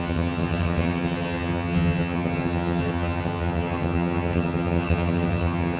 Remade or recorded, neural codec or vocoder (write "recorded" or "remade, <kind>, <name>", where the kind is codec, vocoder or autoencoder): remade, vocoder, HiFi-GAN